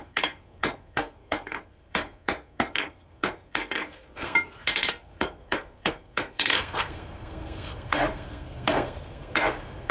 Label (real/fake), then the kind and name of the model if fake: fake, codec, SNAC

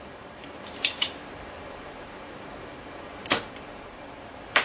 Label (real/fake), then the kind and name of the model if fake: fake, vocoder, BigVGAN v2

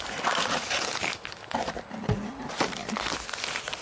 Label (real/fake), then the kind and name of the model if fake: real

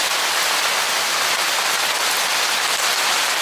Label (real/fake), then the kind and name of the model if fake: real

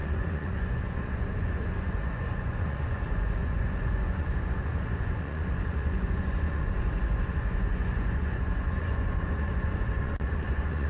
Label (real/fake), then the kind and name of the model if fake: fake, vocoder, Vocos